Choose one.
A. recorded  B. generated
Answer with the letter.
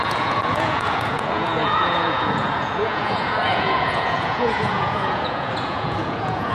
B